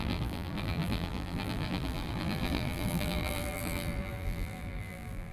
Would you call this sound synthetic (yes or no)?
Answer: yes